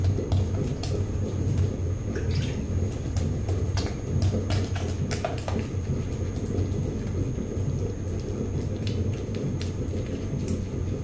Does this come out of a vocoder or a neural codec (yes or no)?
no